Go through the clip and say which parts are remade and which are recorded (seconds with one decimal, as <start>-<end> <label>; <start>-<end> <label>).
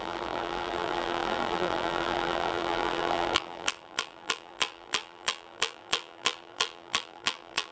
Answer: 0.0-7.7 remade